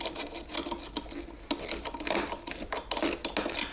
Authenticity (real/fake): real